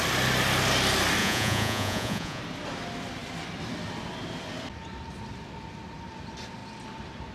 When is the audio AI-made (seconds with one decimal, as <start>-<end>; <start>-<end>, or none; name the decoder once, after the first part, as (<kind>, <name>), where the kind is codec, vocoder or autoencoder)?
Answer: 1.2-2.4 (vocoder, Vocos)